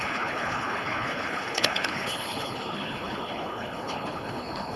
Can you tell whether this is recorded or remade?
remade